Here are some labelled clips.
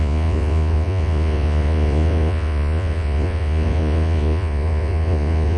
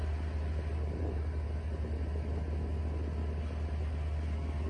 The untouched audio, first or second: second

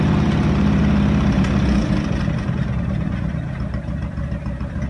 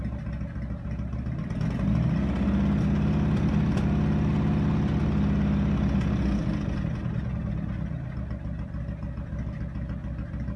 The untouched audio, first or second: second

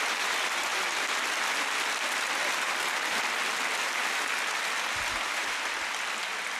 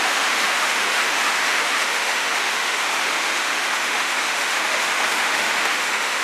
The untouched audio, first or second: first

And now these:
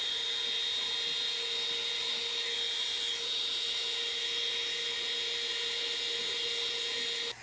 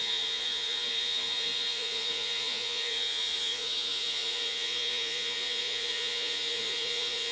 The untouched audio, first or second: first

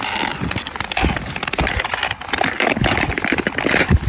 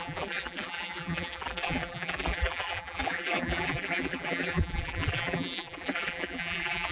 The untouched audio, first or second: first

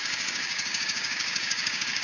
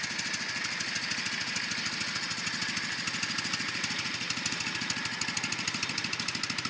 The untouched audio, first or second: second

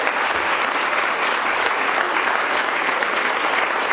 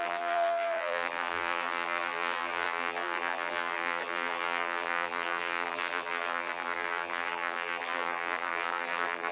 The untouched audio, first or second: first